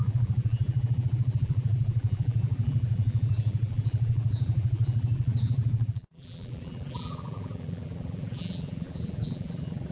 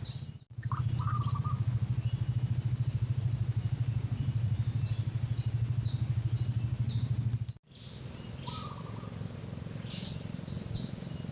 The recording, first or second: second